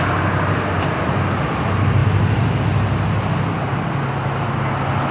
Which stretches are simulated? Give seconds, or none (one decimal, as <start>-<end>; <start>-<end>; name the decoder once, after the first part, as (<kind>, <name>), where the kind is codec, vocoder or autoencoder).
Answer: none